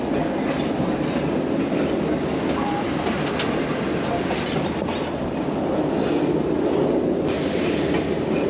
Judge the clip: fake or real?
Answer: real